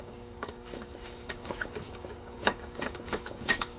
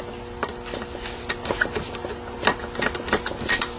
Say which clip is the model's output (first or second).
first